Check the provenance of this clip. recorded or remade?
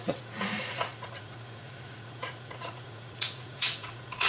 remade